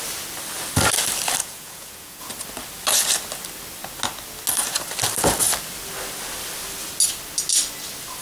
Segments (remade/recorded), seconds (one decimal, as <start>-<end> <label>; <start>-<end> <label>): 0.0-1.4 recorded; 1.4-2.2 remade; 2.2-8.2 recorded